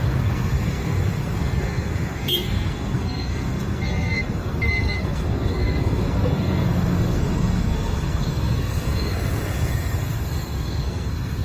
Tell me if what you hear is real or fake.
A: fake